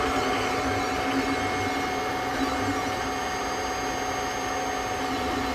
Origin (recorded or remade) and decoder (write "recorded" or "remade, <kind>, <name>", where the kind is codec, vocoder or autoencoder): recorded